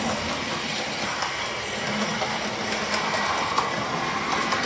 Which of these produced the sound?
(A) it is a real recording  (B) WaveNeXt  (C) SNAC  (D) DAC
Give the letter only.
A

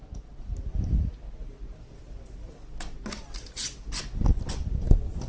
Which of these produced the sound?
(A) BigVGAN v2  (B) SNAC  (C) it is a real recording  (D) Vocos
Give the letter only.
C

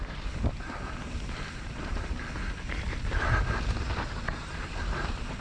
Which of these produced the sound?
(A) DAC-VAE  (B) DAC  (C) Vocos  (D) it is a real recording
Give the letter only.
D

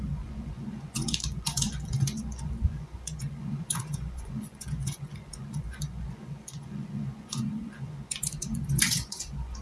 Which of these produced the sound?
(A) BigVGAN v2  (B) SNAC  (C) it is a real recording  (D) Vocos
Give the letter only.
D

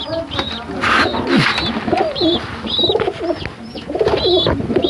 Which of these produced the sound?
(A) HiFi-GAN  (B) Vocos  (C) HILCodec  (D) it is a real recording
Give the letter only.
D